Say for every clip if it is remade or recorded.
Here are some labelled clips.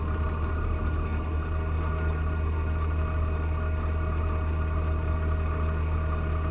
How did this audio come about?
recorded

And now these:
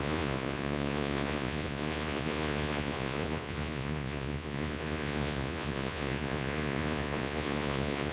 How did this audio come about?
remade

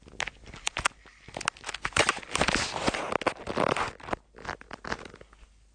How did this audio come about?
recorded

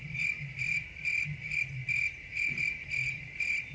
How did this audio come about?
recorded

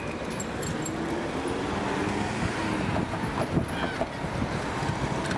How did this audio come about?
recorded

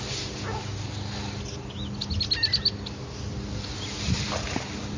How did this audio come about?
recorded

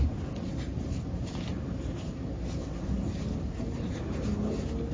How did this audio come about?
recorded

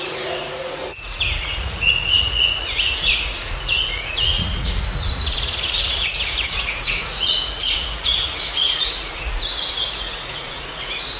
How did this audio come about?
remade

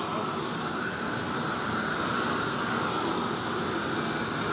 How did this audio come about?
recorded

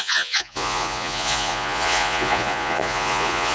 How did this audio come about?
remade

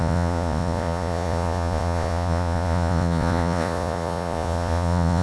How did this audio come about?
remade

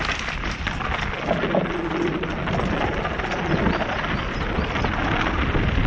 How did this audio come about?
recorded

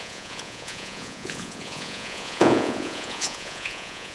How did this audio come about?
remade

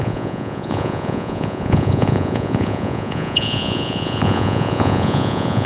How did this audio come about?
remade